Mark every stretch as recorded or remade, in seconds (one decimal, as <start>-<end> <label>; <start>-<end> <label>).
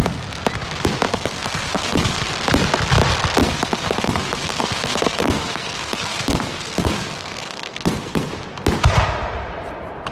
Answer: 0.0-1.1 recorded; 1.1-2.3 remade; 2.3-3.4 recorded; 3.4-8.3 remade; 8.3-10.1 recorded